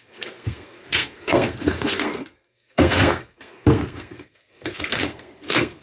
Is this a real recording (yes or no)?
no